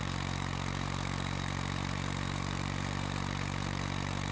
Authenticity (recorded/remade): remade